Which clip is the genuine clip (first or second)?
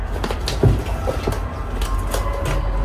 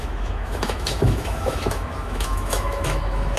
first